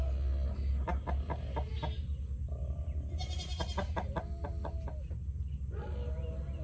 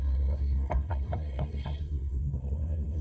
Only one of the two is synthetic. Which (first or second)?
second